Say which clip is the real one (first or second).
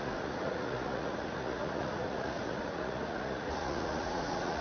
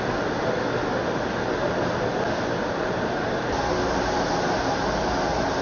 second